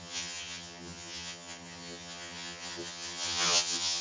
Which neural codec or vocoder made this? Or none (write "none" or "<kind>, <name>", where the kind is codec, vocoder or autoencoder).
vocoder, HiFi-GAN